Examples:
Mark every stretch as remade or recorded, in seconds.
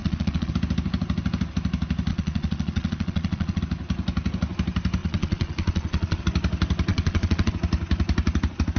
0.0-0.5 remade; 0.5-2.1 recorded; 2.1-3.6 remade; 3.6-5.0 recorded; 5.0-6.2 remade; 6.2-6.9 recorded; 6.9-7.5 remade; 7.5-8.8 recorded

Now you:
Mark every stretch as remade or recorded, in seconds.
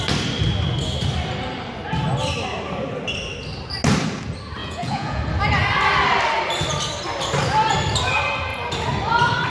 0.0-4.6 recorded; 4.6-5.2 remade; 5.2-9.5 recorded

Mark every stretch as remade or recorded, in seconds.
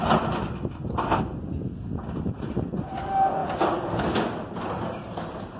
0.0-5.6 recorded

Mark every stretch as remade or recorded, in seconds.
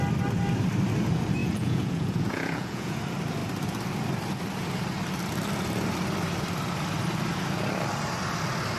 0.0-1.4 recorded; 1.4-3.0 remade; 3.0-8.8 recorded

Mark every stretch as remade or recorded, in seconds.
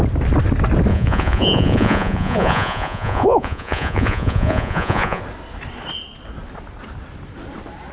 0.0-0.9 recorded; 0.9-5.2 remade; 5.2-7.9 recorded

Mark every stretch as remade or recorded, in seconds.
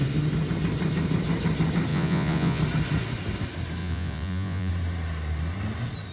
0.0-1.9 recorded; 1.9-2.6 remade; 2.6-3.8 recorded; 3.8-4.7 remade; 4.7-6.1 recorded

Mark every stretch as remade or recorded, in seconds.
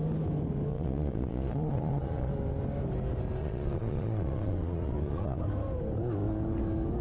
0.0-0.7 recorded; 0.7-2.3 remade; 2.3-3.4 recorded; 3.4-5.4 remade; 5.4-7.0 recorded